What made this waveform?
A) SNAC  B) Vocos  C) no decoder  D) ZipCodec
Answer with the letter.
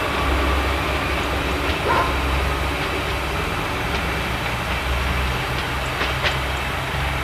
C